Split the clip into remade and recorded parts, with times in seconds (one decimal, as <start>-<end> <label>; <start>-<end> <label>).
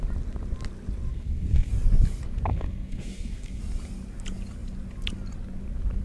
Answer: 0.0-1.1 recorded; 1.1-1.7 remade; 1.7-2.5 recorded; 2.5-3.6 remade; 3.6-6.0 recorded